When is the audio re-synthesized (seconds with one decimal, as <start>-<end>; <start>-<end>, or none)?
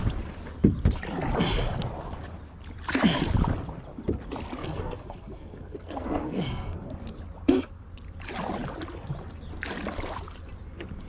4.6-6.9